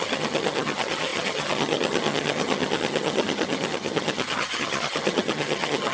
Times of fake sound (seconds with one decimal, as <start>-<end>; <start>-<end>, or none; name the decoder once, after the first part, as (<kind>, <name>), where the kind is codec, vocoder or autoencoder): 0.0-5.9 (vocoder, HiFi-GAN)